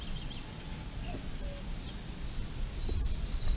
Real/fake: real